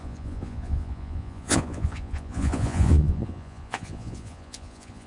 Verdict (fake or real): fake